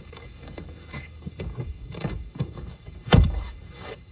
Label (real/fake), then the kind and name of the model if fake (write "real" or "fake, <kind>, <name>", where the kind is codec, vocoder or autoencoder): fake, codec, DAC